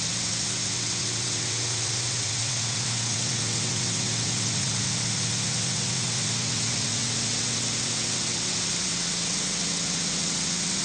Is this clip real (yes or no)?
no